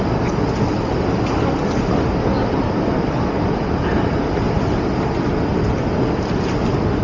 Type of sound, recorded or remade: recorded